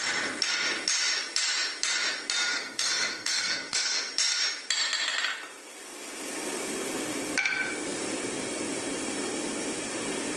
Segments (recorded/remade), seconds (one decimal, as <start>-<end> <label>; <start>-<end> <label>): 0.0-2.5 recorded; 2.5-4.1 remade; 4.1-10.4 recorded